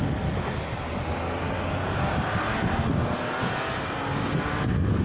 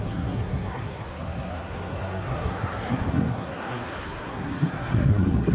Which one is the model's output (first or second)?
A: second